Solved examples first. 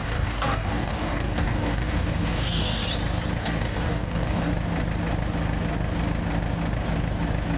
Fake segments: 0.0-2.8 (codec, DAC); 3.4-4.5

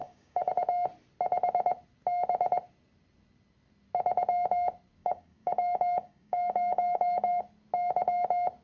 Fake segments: 0.0-0.5 (codec, DAC); 5.0-7.4

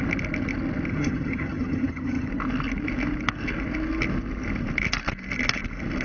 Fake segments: 0.9-2.3 (vocoder, HiFi-GAN)

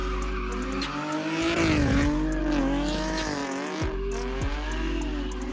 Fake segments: 2.6-3.4 (autoencoder, DAC-VAE)